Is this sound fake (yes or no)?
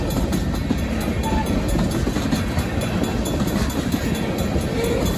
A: no